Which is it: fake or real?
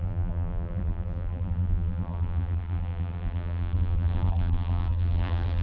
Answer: fake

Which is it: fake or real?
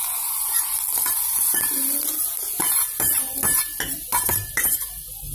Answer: real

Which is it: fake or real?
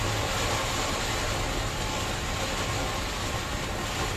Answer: real